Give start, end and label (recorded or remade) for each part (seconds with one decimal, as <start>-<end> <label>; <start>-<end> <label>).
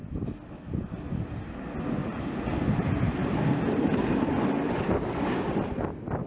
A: 0.0-2.0 recorded; 2.0-4.3 remade; 4.3-6.3 recorded